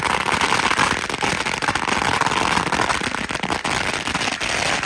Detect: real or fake real